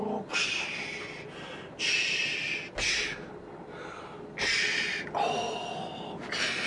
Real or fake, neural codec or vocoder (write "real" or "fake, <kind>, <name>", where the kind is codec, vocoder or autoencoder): real